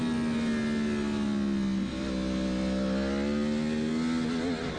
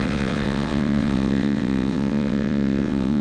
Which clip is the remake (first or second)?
second